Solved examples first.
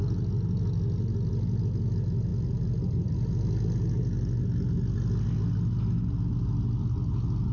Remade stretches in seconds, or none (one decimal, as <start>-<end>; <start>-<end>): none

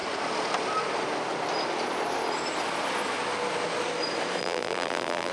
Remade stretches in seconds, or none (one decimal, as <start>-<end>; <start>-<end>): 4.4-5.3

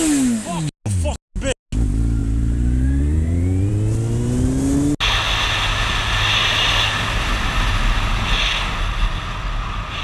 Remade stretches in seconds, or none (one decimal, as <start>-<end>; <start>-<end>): 2.2-3.7; 6.4-7.3

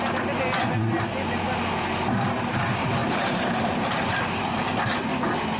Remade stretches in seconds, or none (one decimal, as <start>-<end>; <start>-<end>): 3.0-4.4

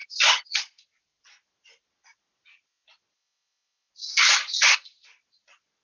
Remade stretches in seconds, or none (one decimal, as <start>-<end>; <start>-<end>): none

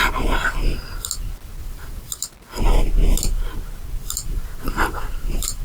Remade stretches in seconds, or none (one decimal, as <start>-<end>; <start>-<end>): 1.6-2.1; 4.0-5.6